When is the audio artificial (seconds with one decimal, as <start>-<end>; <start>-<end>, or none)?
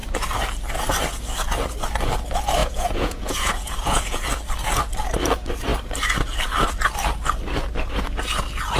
2.6-4.2